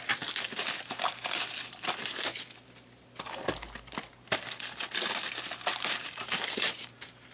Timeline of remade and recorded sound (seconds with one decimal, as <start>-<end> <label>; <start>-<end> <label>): 0.0-5.7 recorded; 5.7-7.3 remade